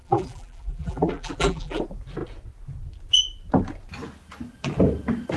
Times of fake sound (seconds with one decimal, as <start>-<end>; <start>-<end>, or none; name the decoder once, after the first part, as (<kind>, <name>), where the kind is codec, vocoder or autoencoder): 0.0-1.8 (vocoder, BigVGAN v2)